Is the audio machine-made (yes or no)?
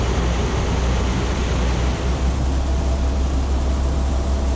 no